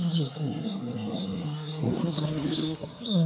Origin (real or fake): fake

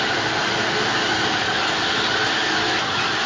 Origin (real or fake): real